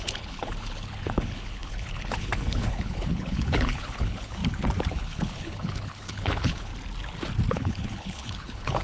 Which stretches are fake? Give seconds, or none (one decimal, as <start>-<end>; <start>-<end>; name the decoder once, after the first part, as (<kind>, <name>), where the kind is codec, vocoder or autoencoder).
0.0-4.4 (codec, HILCodec); 4.9-6.7; 7.5-8.8